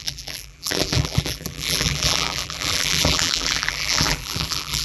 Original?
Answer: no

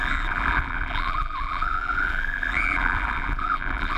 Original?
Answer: no